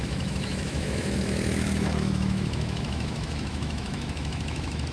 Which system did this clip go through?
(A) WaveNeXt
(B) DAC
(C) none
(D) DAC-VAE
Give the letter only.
D